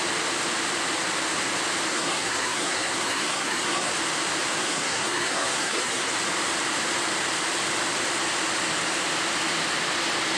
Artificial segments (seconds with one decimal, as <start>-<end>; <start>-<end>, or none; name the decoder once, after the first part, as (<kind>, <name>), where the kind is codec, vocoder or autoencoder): 1.9-3.9 (codec, SNAC); 4.6-6.1